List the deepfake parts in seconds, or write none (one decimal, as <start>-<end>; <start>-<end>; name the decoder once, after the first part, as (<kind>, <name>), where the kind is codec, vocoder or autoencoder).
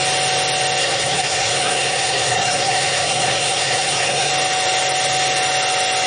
0.8-4.3 (codec, SNAC)